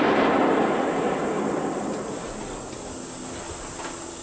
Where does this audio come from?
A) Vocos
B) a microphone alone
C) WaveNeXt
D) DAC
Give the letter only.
B